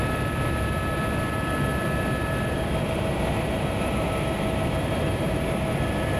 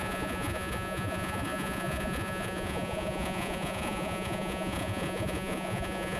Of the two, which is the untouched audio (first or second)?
first